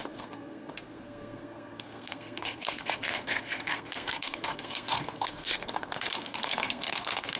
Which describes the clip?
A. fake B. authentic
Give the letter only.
A